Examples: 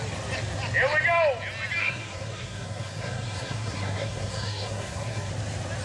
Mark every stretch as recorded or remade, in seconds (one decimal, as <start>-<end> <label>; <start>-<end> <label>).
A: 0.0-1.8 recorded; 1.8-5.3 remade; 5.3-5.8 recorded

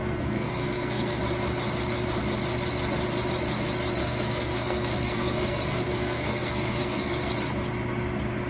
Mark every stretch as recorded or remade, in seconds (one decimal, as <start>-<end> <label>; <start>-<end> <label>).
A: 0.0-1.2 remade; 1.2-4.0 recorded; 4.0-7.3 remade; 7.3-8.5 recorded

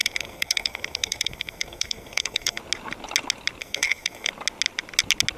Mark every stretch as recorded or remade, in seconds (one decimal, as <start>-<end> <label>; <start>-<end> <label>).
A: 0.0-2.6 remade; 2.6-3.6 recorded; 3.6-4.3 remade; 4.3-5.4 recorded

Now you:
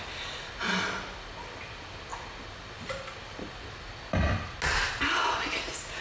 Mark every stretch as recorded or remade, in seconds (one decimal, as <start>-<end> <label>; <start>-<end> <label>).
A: 0.0-6.0 recorded